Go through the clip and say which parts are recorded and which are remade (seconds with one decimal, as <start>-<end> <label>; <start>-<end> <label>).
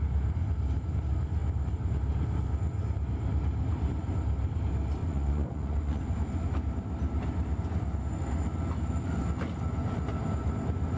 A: 0.0-5.0 recorded; 5.0-6.0 remade; 6.0-11.0 recorded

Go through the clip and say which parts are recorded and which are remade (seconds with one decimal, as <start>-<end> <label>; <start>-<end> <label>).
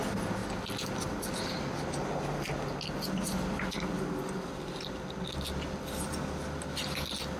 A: 0.0-7.4 recorded